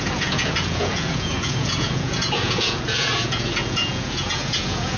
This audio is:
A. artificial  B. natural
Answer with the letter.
A